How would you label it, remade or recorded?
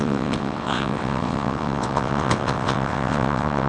remade